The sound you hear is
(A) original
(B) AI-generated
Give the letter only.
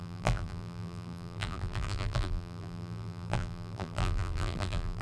B